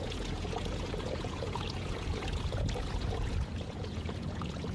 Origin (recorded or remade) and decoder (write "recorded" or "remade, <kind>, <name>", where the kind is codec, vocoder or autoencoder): remade, vocoder, Vocos